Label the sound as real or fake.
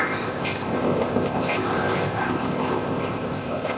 fake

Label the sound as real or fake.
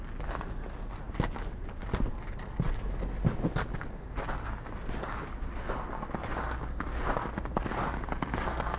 real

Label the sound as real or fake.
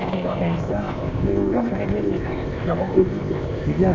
fake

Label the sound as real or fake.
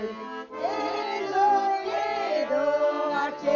real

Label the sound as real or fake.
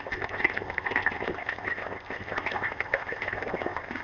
fake